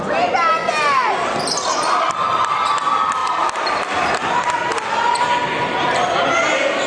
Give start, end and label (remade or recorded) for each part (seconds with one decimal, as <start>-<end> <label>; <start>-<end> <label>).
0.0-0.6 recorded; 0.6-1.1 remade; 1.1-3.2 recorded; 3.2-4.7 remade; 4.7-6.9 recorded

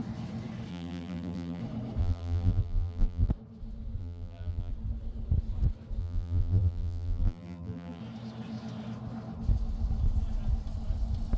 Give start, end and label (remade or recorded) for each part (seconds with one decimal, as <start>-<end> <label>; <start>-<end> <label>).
0.0-0.7 recorded; 0.7-1.6 remade; 1.6-2.0 recorded; 2.0-3.3 remade; 3.3-4.0 recorded; 4.0-4.7 remade; 4.7-6.0 recorded; 6.0-8.0 remade; 8.0-11.4 recorded

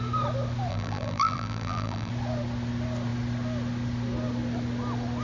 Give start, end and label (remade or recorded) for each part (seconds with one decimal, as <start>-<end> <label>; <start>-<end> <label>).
0.0-0.7 recorded; 0.7-2.1 remade; 2.1-5.2 recorded